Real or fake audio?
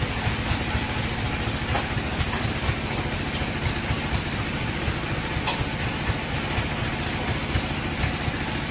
real